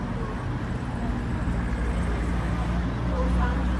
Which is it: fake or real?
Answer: real